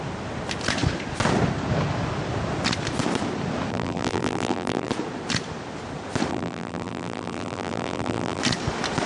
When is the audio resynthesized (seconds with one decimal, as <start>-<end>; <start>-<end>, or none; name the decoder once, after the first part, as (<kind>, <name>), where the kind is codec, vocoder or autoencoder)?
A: 3.7-4.9 (vocoder, BigVGAN v2); 6.3-8.4